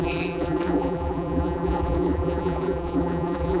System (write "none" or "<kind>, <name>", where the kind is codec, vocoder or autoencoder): vocoder, BigVGAN v2